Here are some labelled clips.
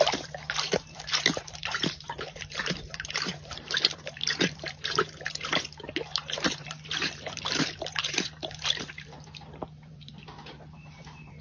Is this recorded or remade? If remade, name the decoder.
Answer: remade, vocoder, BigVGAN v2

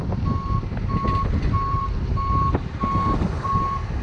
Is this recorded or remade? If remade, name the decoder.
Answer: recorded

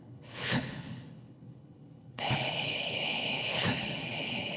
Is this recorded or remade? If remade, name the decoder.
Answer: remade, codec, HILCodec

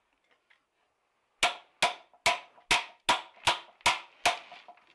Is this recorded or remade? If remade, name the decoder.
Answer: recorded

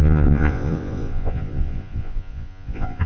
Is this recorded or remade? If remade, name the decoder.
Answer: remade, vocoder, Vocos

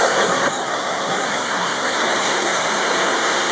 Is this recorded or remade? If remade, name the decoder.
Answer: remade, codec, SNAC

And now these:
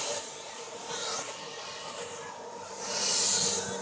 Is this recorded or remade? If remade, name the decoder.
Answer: recorded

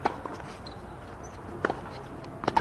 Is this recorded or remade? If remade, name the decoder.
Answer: recorded